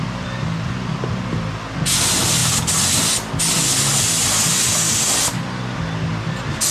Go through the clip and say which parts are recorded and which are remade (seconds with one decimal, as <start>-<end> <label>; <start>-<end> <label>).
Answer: 0.0-6.7 recorded